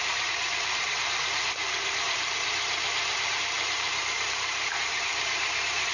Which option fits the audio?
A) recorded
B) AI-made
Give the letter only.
B